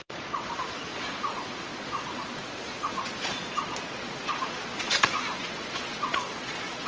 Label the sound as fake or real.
fake